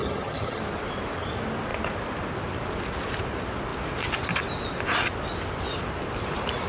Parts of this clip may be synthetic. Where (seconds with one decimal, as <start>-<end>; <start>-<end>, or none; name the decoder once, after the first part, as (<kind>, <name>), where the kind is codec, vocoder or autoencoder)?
0.0-0.6 (vocoder, HiFi-GAN)